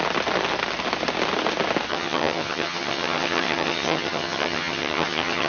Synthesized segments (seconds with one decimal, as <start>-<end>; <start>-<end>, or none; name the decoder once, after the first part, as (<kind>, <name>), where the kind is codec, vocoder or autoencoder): 1.9-5.5 (vocoder, HiFi-GAN)